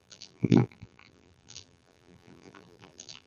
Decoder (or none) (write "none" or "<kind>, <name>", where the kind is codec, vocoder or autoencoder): vocoder, BigVGAN v2